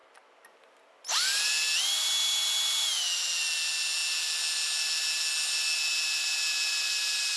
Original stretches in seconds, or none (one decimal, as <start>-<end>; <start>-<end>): 0.0-7.4